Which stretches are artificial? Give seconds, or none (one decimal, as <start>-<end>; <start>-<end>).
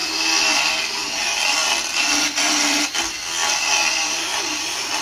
none